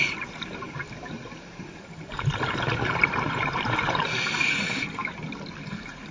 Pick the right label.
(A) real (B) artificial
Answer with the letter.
B